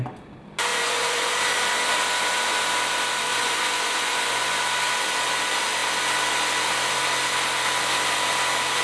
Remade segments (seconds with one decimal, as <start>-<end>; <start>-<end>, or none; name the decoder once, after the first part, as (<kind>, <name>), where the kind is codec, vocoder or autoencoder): 0.7-1.3 (vocoder, Vocos); 3.3-4.6